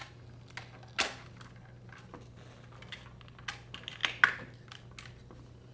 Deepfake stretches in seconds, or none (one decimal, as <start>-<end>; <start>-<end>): none